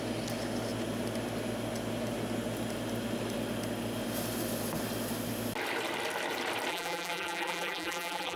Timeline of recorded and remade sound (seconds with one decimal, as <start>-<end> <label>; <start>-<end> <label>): 0.0-6.7 recorded; 6.7-8.4 remade